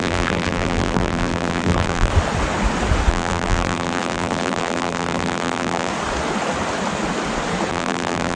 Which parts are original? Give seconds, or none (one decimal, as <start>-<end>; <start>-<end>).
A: 2.1-3.1; 5.9-7.7